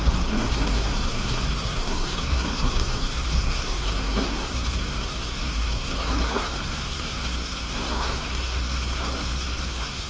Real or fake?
fake